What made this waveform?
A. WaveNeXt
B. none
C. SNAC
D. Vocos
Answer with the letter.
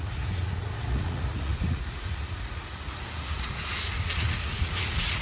D